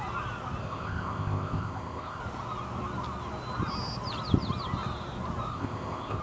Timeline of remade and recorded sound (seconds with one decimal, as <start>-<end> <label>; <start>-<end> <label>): 0.0-0.6 recorded; 0.6-2.2 remade; 2.2-5.5 recorded; 5.5-6.2 remade